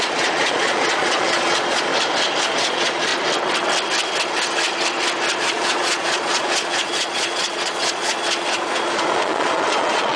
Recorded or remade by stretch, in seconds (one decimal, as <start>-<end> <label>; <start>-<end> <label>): 0.0-1.9 remade; 1.9-2.4 recorded; 2.4-3.1 remade; 3.1-5.4 recorded; 5.4-10.2 remade

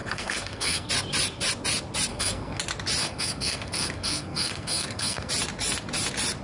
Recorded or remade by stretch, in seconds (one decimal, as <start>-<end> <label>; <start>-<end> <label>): 0.0-0.9 remade; 0.9-2.1 recorded; 2.1-2.6 remade; 2.6-3.0 recorded; 3.0-5.3 remade; 5.3-6.4 recorded